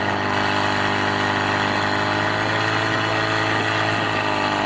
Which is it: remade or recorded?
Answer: recorded